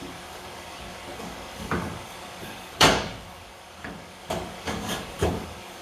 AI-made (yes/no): yes